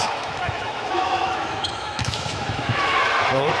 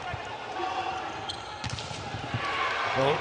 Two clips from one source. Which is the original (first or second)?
second